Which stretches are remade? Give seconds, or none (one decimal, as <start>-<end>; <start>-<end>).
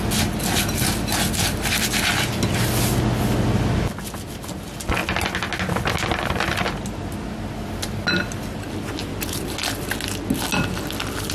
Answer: none